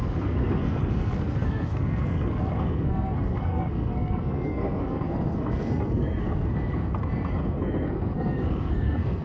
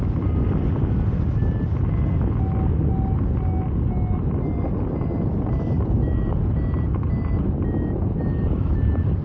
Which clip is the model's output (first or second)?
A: first